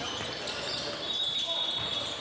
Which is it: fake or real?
real